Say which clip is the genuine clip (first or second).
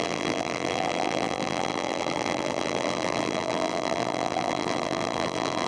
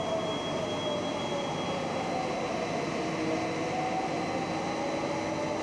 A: second